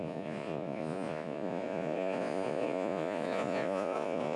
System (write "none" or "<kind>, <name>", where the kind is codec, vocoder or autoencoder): vocoder, Vocos